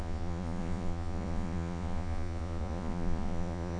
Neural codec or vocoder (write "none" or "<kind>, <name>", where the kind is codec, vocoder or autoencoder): vocoder, Vocos